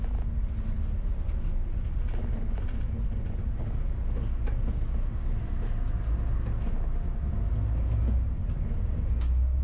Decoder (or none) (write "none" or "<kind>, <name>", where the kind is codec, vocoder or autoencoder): none